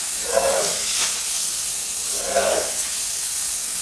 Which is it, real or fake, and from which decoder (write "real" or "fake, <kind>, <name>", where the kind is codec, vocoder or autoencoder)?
fake, codec, SNAC